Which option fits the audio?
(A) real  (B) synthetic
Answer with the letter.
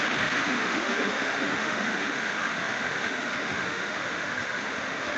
B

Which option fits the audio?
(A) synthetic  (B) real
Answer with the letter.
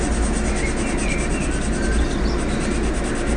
B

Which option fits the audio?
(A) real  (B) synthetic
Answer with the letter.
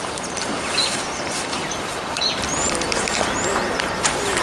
B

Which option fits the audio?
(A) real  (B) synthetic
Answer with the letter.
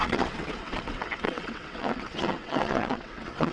B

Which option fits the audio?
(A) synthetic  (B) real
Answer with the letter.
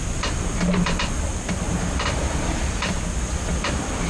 B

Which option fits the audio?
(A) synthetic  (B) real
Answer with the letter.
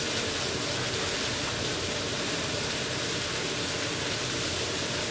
B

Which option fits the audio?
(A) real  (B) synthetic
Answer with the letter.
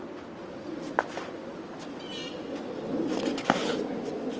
A